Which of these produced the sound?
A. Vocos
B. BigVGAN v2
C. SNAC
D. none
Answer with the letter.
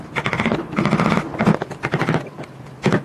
D